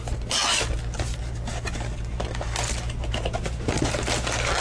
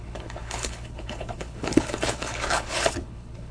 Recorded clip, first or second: first